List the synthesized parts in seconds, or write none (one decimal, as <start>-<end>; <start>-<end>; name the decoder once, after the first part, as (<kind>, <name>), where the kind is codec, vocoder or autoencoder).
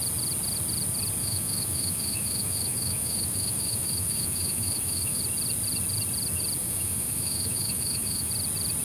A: 1.2-5.2 (autoencoder, DAC-VAE); 6.6-8.3